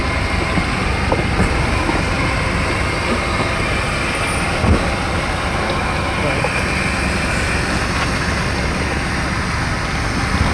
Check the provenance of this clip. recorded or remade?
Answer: recorded